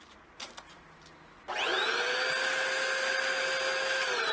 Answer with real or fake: real